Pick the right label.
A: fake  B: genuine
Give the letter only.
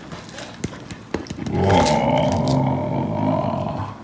B